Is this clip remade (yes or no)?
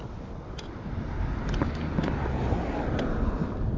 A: no